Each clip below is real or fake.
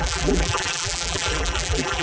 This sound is fake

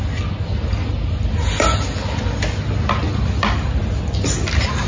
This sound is real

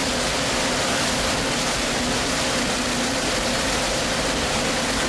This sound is real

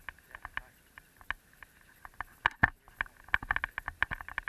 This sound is real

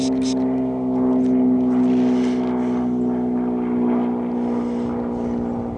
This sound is real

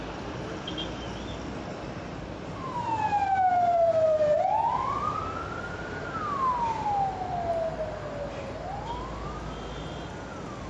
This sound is real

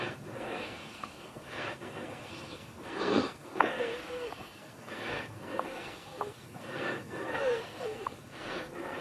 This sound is fake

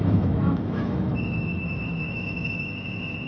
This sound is fake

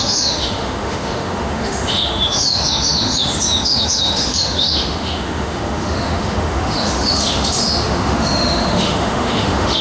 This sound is fake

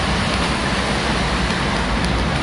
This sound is real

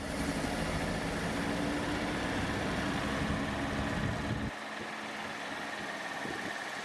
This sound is real